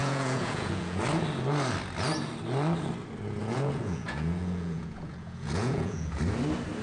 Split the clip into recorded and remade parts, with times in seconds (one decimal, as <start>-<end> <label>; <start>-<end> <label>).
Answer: 0.0-1.0 remade; 1.0-3.4 recorded; 3.4-6.2 remade; 6.2-6.8 recorded